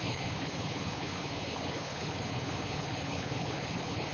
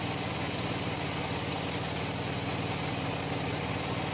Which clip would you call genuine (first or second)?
second